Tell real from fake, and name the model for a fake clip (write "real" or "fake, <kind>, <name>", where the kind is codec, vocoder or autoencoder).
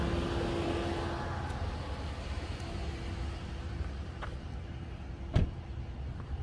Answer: real